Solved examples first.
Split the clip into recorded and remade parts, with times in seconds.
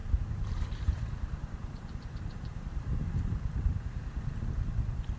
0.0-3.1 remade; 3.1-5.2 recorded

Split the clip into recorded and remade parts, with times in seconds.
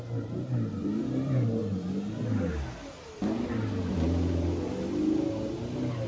0.0-6.1 recorded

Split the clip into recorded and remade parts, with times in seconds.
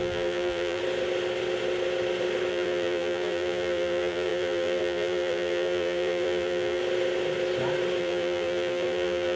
0.0-0.8 remade; 0.8-2.5 recorded; 2.5-6.8 remade; 6.8-8.0 recorded; 8.0-9.4 remade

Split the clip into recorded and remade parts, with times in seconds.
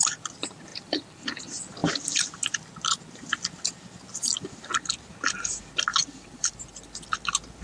0.0-0.7 recorded; 0.7-1.4 remade; 1.4-6.0 recorded; 6.0-6.6 remade; 6.6-7.6 recorded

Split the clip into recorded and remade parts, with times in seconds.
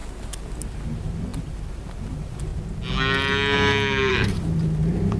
0.0-0.6 recorded; 0.6-2.5 remade; 2.5-4.1 recorded; 4.1-5.2 remade